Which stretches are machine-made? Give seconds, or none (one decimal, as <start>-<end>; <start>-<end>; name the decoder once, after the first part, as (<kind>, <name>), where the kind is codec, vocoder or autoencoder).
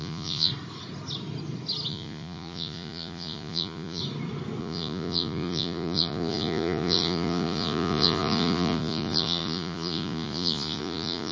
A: 0.0-0.5 (vocoder, Vocos); 1.9-4.0; 4.6-11.3